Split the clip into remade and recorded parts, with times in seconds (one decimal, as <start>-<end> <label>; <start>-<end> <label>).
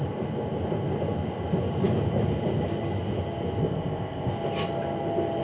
0.0-3.6 recorded; 3.6-4.3 remade; 4.3-5.4 recorded